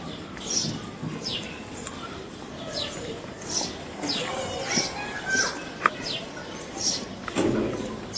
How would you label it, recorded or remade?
recorded